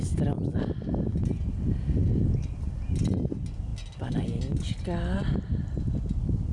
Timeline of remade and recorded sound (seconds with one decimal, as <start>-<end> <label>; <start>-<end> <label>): 0.0-6.5 recorded